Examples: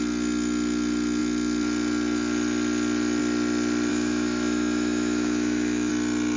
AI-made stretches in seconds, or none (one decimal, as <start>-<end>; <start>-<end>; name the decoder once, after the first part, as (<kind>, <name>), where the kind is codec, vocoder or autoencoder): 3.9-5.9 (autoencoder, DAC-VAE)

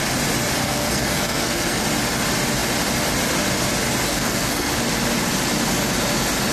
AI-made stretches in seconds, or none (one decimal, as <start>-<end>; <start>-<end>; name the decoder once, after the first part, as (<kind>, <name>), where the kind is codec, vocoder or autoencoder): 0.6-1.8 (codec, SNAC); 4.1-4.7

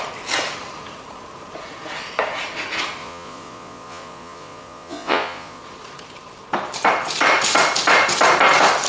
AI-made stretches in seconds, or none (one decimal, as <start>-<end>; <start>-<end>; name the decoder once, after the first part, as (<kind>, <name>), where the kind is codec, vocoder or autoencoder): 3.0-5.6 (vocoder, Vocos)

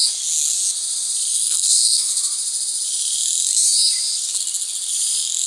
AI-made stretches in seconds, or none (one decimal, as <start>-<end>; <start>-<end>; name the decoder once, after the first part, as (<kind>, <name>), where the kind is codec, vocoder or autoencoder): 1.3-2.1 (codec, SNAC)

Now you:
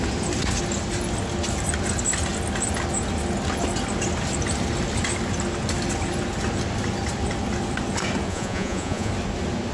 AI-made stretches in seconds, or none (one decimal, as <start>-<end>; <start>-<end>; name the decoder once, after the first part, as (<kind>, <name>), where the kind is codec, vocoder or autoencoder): 8.3-9.1 (vocoder, Vocos)

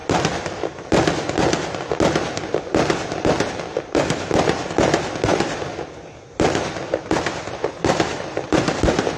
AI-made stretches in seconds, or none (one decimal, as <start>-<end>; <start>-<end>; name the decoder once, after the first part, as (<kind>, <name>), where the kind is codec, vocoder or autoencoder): none